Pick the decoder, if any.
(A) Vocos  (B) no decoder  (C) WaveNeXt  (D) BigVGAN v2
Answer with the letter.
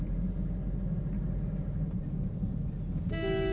B